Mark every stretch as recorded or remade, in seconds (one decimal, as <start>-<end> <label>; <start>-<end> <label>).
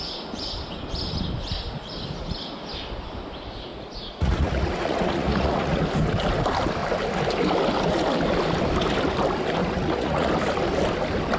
0.0-3.7 recorded; 3.7-5.8 remade; 5.8-9.6 recorded; 9.6-10.3 remade; 10.3-11.4 recorded